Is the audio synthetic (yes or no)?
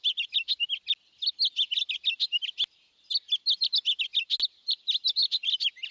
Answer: no